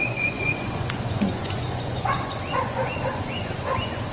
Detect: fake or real fake